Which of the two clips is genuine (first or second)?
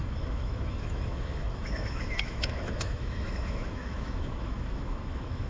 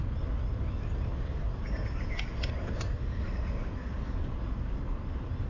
second